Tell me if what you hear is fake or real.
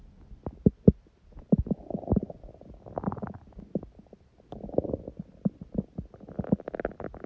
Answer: real